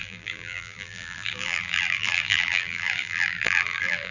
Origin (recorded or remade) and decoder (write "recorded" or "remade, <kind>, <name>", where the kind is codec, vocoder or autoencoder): remade, vocoder, BigVGAN v2